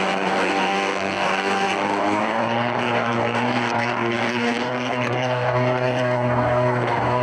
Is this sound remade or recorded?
remade